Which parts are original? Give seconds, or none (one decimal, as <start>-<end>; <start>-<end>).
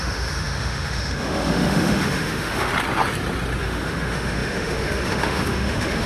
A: 2.7-3.6